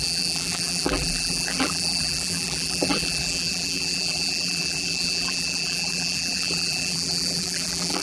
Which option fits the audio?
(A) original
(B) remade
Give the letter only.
B